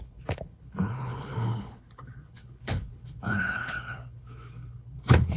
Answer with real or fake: fake